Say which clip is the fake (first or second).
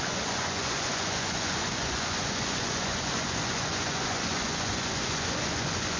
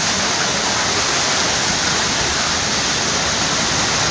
first